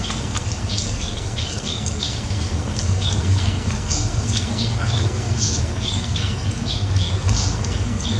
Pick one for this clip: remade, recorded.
remade